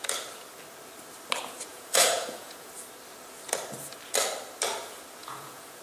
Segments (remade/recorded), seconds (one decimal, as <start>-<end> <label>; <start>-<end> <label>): 0.0-1.7 recorded; 1.7-2.7 remade; 2.7-5.2 recorded; 5.2-5.8 remade